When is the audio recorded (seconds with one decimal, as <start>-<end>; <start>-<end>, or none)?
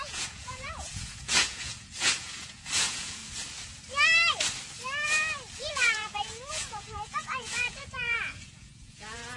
3.2-5.7